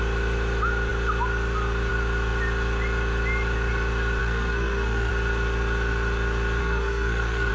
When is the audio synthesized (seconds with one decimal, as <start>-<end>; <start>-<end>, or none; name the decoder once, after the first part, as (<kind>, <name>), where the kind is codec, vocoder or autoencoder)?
4.2-5.1 (codec, SNAC); 6.6-7.5